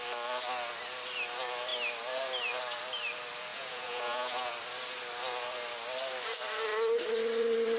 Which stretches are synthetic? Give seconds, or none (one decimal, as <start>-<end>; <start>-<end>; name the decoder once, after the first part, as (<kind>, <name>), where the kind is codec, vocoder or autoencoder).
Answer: 3.5-4.5 (vocoder, Vocos)